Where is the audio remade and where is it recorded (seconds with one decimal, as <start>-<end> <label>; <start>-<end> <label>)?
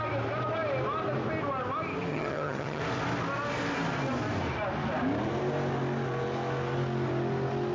0.0-2.1 recorded; 2.1-2.8 remade; 2.8-7.7 recorded